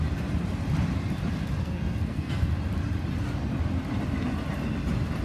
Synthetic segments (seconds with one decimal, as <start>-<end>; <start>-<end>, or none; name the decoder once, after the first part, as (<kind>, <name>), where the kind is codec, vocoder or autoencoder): 1.6-2.5 (codec, SNAC)

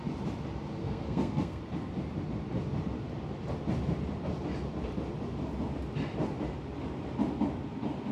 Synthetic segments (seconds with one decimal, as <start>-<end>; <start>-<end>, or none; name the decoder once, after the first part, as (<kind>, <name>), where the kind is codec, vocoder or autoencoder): 0.8-1.6 (codec, SNAC)

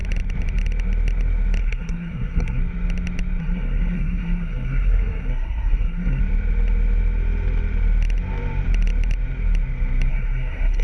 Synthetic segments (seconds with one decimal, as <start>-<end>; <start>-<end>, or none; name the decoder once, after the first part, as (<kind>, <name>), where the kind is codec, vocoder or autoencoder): 1.6-2.6 (codec, SNAC); 3.4-6.2; 10.1-10.8

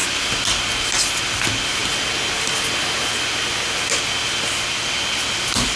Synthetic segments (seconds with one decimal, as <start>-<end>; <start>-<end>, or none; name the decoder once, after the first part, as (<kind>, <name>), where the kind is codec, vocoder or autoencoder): none

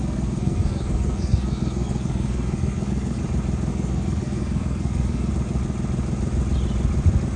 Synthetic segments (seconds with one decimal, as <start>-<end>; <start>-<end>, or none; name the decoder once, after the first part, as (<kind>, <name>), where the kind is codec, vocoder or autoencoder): 0.0-3.2 (codec, SNAC); 3.7-5.3

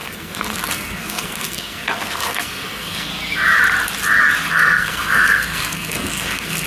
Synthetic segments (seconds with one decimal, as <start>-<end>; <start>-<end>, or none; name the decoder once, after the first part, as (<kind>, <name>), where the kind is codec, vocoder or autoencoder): 0.0-3.1 (codec, SNAC); 4.5-6.7